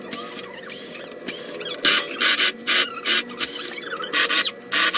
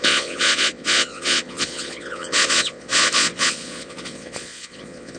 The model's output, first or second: second